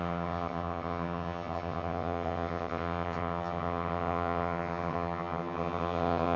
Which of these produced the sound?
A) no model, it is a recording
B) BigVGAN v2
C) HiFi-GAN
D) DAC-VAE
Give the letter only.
C